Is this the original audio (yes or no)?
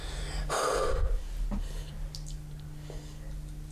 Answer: yes